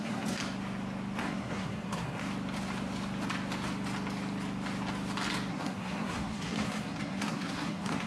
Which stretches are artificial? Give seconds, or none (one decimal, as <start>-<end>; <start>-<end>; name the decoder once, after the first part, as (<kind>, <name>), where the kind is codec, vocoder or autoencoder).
0.0-0.4 (codec, SNAC); 1.2-2.2; 5.5-8.1